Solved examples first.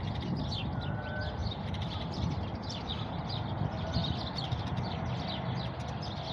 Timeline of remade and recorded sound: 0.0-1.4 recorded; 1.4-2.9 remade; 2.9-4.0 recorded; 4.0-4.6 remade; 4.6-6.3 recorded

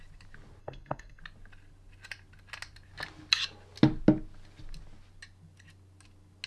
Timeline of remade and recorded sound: 0.0-0.6 recorded; 0.6-1.2 remade; 1.2-6.5 recorded

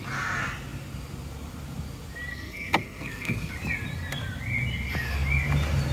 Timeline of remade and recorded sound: 0.0-2.3 recorded; 2.3-3.5 remade; 3.5-5.9 recorded

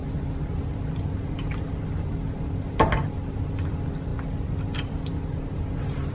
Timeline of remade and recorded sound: 0.0-6.1 recorded